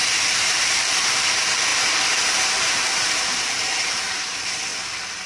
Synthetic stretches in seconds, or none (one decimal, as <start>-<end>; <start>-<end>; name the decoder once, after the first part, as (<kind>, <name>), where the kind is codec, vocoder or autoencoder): 0.0-4.7 (vocoder, BigVGAN v2)